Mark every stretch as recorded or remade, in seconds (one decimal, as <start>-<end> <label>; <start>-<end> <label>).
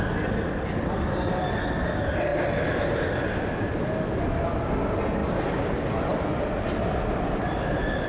0.0-8.1 recorded